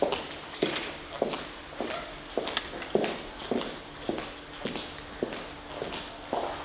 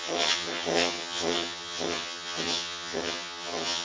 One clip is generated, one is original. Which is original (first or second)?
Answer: first